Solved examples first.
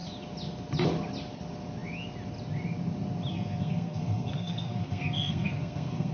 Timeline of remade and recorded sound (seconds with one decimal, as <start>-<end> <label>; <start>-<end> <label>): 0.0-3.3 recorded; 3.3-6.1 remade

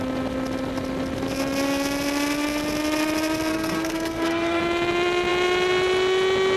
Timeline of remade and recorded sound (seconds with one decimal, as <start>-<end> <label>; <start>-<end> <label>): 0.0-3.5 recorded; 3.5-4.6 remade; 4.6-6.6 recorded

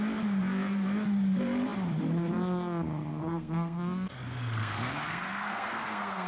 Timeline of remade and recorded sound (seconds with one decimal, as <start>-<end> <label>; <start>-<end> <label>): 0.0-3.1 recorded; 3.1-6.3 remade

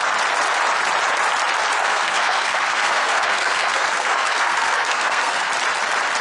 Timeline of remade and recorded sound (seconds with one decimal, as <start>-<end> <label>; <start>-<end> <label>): 0.0-1.8 recorded; 1.8-5.5 remade; 5.5-6.2 recorded

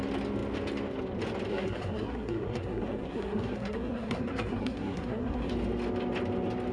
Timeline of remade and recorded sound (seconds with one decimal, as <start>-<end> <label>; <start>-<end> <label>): 0.0-1.5 recorded; 1.5-5.5 remade; 5.5-6.7 recorded